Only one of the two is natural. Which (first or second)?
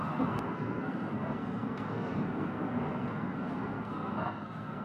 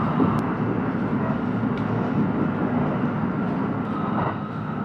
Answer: second